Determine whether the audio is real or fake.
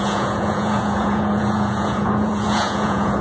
fake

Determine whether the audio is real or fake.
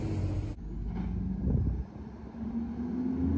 real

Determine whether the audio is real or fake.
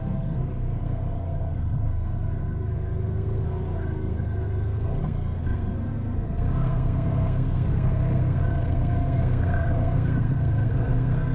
fake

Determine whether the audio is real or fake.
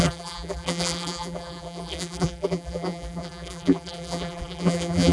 fake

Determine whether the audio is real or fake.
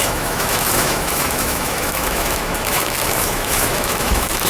fake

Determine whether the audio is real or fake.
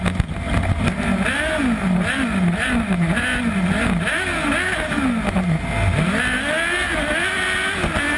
real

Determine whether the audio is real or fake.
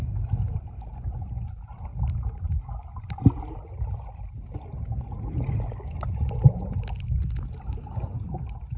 real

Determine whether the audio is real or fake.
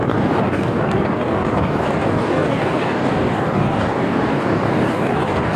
fake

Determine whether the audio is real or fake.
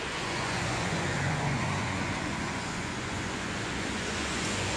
fake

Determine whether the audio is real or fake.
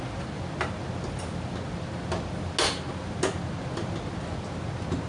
real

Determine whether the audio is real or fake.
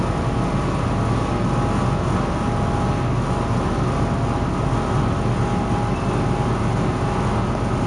real